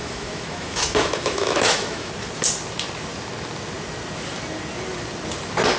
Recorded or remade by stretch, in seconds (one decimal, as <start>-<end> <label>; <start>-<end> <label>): 0.0-2.1 remade; 2.1-5.8 recorded